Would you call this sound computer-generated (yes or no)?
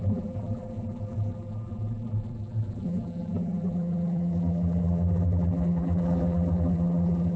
yes